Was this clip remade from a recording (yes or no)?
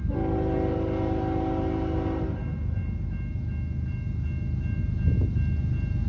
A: no